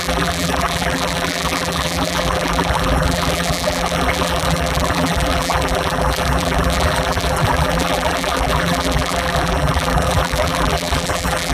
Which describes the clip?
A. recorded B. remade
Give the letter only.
B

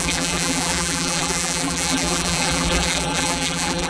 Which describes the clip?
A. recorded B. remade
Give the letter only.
B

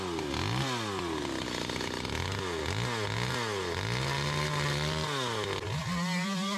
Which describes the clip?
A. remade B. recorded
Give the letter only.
B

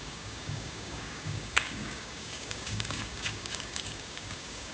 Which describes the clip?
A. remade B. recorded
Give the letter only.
A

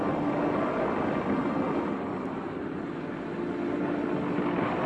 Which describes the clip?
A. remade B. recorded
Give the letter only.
B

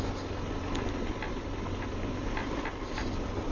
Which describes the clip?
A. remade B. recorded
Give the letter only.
B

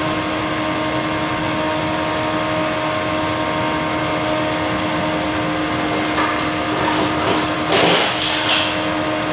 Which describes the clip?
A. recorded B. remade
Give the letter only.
A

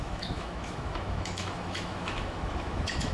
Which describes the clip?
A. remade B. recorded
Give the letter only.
A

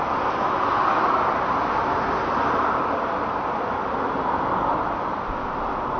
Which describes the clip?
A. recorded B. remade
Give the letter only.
A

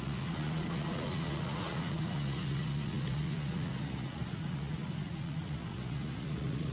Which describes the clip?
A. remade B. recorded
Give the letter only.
A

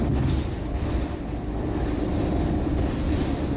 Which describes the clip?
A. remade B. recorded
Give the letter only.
B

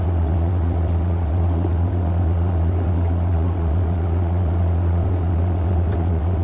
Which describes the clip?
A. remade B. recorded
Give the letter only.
A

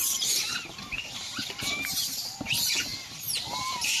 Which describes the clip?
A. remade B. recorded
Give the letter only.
A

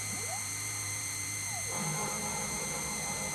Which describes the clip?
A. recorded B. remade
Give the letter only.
B